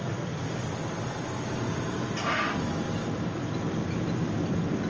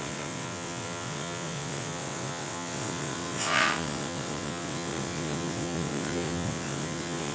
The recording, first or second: first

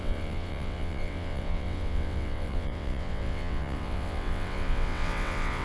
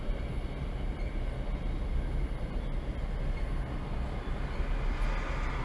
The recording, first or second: second